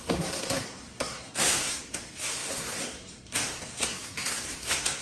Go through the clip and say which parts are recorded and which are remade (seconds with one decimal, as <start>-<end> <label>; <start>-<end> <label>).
0.0-5.0 remade